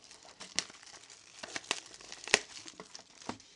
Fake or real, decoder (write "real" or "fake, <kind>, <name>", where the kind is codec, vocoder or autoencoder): real